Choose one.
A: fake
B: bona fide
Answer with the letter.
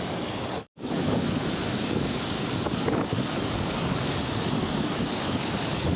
A